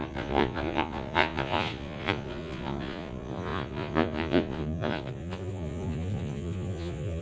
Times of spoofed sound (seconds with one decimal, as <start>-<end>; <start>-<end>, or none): 0.0-7.2